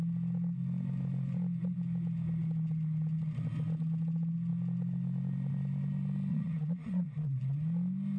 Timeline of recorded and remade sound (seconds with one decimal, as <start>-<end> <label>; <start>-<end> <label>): 0.0-6.3 recorded; 6.3-7.4 remade; 7.4-8.2 recorded